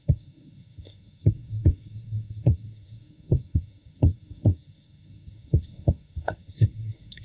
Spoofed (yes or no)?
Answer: yes